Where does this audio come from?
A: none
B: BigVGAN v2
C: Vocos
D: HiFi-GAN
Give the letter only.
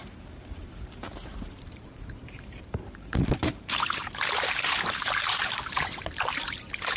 B